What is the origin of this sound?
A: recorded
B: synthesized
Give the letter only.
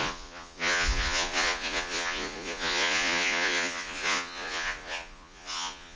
B